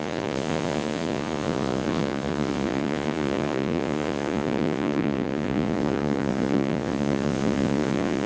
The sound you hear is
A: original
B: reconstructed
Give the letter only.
B